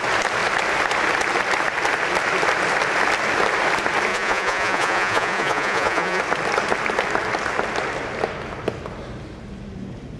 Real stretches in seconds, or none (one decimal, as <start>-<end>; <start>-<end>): 0.0-4.1; 6.2-10.2